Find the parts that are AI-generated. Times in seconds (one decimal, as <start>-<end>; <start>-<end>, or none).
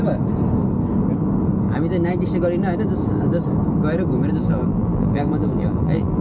4.4-6.2